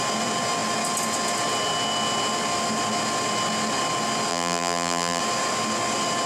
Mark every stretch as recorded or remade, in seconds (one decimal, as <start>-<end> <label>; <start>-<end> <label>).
0.0-4.3 recorded; 4.3-5.2 remade; 5.2-6.3 recorded